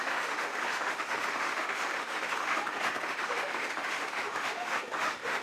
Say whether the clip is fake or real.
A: fake